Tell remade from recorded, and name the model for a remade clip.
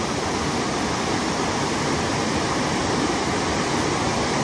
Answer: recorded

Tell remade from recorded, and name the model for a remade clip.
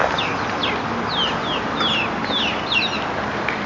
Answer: recorded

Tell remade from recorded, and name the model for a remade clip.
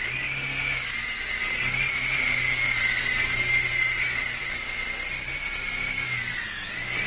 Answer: recorded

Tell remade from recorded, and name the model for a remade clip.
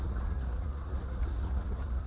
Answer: remade, vocoder, Vocos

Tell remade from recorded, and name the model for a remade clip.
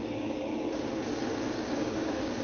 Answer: remade, codec, DAC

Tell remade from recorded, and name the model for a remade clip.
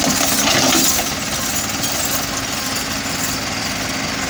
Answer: recorded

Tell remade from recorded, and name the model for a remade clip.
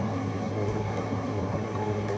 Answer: remade, codec, SNAC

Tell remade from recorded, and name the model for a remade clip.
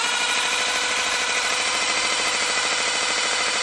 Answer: recorded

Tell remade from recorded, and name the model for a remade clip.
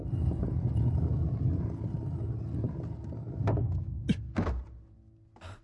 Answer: recorded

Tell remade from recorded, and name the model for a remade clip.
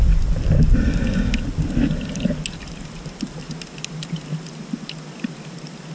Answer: recorded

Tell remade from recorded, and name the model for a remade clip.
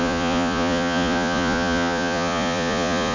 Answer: remade, vocoder, Vocos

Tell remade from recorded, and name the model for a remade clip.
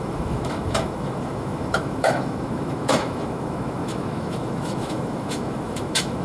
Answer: remade, autoencoder, DAC-VAE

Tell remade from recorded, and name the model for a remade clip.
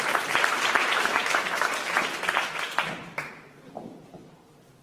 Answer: remade, vocoder, BigVGAN v2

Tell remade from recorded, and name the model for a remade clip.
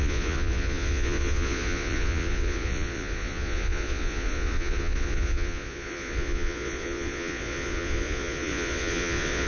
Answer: remade, vocoder, Vocos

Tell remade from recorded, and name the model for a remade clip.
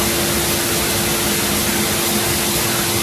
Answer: recorded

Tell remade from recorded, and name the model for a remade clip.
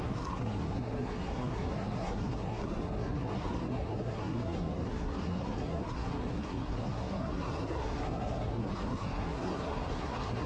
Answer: remade, codec, SNAC